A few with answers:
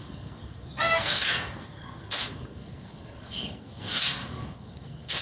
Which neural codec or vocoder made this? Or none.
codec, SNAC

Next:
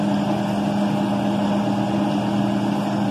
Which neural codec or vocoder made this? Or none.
none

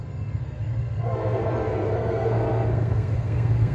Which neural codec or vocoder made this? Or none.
codec, SNAC